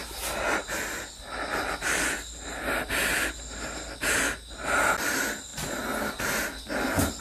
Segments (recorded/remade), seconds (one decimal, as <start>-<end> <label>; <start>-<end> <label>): 0.0-7.2 recorded